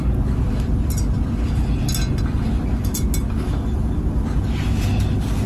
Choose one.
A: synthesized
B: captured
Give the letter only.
B